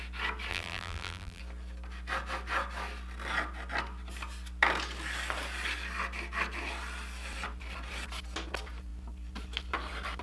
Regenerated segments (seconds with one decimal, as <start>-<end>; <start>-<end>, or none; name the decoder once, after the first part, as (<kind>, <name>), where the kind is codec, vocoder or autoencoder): 0.5-1.4 (vocoder, BigVGAN v2)